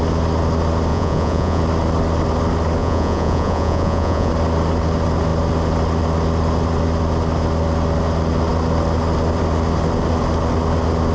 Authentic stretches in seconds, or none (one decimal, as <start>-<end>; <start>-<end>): 0.0-0.9; 1.6-2.8; 4.3-11.1